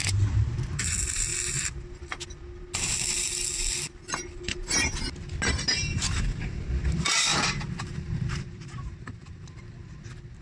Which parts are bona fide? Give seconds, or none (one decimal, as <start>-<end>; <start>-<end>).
0.0-7.3; 9.6-10.4

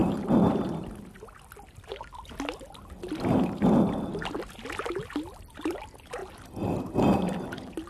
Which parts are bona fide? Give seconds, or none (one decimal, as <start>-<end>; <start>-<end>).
0.0-7.9

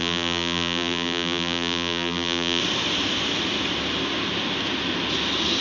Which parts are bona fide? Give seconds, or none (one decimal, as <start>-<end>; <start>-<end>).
2.6-5.6

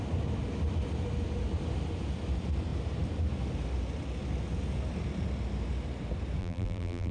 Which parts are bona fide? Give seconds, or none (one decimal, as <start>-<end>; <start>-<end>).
0.0-6.4

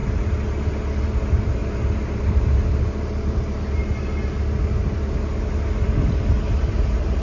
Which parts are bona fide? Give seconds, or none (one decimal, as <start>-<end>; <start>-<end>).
0.0-1.0; 3.8-6.6